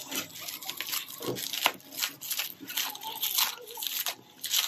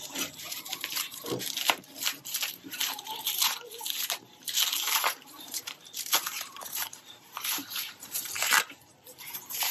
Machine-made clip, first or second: second